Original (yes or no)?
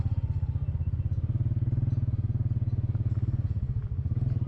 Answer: yes